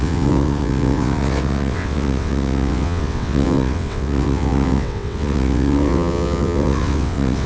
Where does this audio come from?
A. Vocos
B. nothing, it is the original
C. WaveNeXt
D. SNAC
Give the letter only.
C